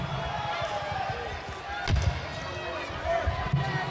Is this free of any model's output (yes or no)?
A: yes